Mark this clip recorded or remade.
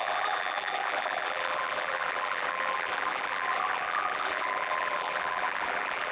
remade